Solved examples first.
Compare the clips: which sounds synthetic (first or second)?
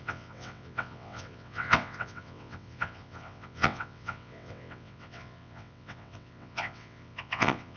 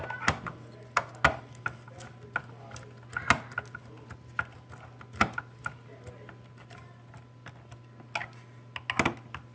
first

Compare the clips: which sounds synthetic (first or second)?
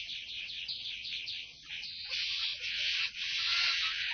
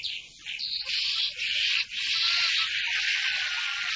first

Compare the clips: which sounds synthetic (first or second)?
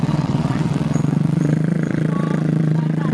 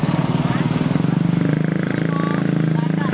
first